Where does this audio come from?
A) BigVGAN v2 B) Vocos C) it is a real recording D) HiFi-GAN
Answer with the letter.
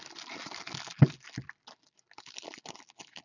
C